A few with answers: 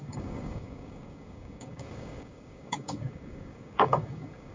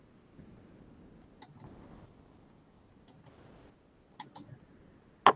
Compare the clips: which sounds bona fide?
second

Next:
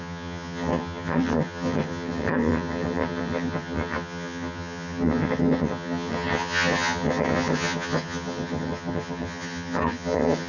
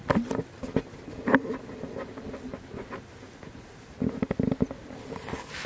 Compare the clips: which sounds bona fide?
second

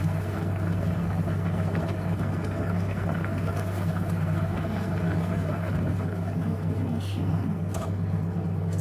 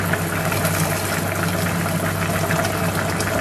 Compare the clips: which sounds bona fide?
second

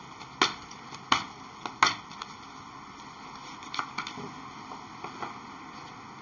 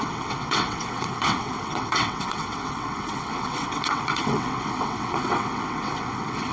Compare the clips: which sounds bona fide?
first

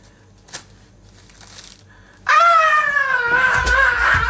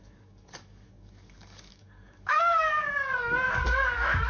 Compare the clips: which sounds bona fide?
first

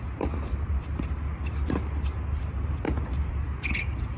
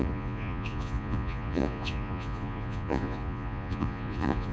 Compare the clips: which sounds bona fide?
first